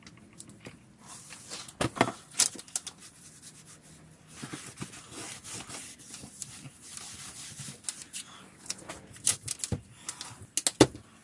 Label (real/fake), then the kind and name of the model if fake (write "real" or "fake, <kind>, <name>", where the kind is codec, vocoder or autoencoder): real